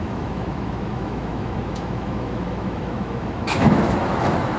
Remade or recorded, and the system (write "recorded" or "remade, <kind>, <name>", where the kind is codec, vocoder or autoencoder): remade, autoencoder, DAC-VAE